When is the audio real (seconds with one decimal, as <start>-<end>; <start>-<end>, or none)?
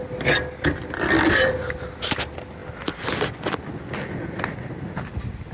0.0-5.5